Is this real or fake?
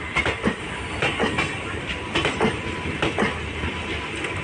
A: real